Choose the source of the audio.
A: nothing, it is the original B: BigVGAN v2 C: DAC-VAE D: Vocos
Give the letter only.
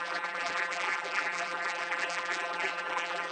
B